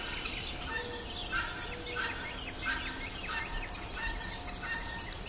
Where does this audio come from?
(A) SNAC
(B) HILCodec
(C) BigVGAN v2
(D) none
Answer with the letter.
D